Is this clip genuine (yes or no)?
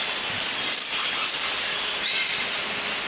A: yes